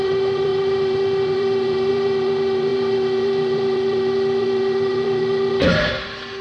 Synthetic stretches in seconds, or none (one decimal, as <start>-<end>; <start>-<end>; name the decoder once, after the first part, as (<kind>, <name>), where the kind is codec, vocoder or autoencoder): 0.0-6.4 (vocoder, BigVGAN v2)